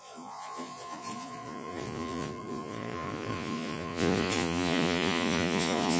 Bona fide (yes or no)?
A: no